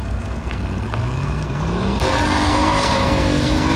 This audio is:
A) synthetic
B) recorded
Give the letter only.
A